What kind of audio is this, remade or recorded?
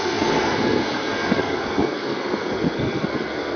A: remade